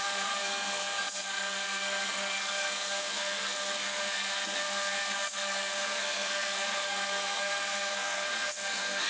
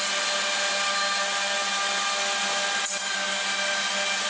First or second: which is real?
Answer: second